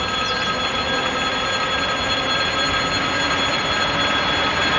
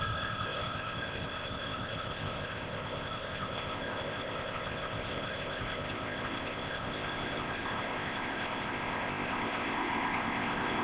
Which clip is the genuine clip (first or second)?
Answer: first